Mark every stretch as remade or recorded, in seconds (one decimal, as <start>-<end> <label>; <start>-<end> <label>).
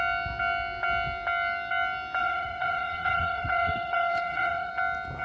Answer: 0.0-2.2 recorded; 2.2-4.7 remade; 4.7-5.2 recorded